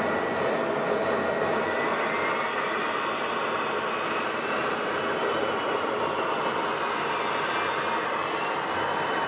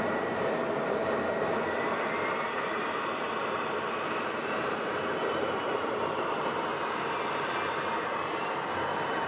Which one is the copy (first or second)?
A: second